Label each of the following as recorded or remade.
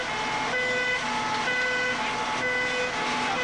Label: recorded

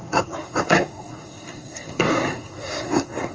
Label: remade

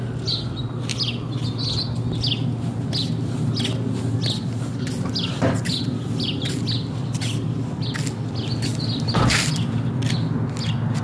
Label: recorded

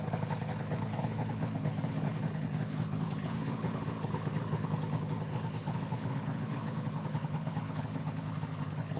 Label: remade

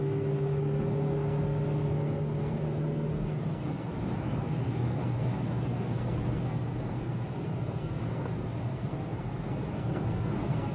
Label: remade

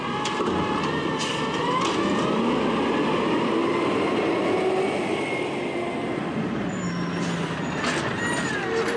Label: recorded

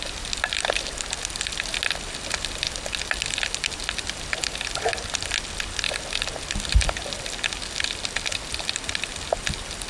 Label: recorded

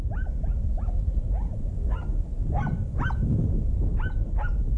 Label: recorded